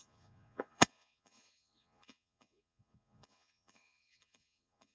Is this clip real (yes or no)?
no